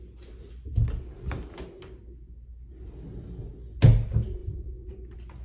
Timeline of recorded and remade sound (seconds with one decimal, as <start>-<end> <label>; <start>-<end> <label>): 0.0-5.4 recorded